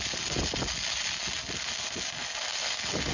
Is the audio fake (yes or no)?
no